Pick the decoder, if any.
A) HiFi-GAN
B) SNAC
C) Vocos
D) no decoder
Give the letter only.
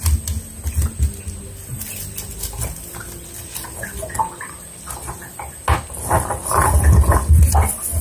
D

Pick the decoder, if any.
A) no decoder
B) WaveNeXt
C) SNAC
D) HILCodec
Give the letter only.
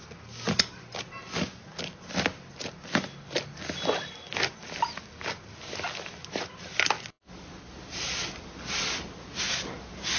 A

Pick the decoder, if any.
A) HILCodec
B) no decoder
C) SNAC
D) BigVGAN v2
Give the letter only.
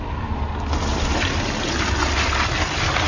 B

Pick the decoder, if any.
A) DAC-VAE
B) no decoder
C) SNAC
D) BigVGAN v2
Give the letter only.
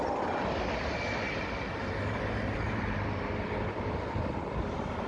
B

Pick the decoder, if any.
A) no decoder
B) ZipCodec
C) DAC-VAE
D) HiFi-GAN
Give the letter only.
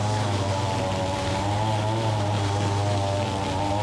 A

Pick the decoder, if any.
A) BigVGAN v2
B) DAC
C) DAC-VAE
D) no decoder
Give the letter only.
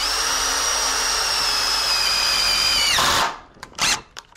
A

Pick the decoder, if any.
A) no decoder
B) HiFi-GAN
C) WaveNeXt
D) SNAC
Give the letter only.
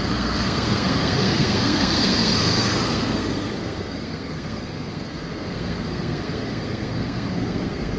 D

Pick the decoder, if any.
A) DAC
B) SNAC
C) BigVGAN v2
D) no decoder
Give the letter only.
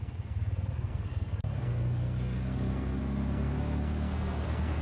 B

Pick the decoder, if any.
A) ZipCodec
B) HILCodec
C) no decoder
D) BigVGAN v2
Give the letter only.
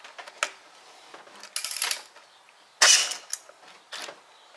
C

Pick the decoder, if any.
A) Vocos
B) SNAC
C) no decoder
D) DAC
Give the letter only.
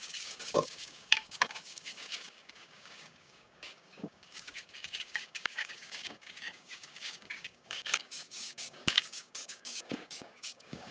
D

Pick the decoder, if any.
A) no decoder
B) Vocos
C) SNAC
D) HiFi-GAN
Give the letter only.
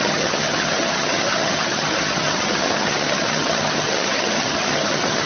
D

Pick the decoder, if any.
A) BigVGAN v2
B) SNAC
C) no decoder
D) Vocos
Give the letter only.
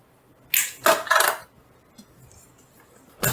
C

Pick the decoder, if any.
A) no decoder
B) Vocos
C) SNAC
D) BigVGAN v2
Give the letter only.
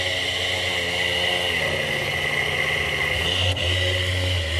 A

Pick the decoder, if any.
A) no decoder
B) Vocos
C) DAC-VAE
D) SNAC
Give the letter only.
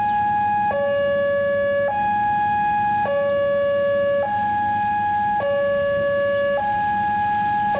A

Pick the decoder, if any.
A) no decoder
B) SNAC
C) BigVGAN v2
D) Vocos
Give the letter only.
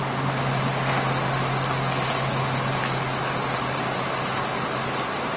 A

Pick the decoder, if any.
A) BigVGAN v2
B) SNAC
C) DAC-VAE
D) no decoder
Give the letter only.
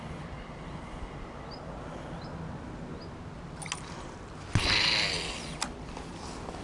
D